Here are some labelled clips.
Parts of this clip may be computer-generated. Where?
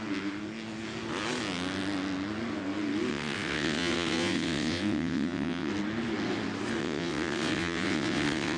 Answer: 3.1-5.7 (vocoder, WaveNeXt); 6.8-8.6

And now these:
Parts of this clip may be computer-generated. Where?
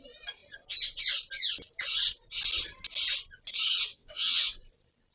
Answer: 3.9-4.6 (vocoder, WaveNeXt)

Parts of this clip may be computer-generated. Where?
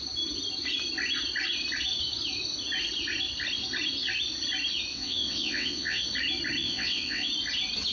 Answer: 4.9-6.0 (vocoder, WaveNeXt); 6.6-7.3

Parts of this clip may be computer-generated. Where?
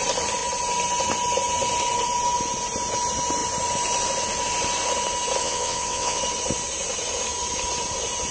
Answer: 5.4-6.2 (vocoder, WaveNeXt)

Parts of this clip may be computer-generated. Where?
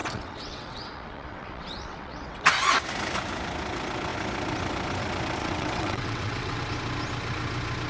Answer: 0.0-2.5 (vocoder, WaveNeXt); 5.4-6.6